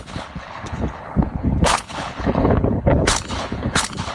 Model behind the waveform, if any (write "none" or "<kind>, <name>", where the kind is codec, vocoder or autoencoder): codec, HILCodec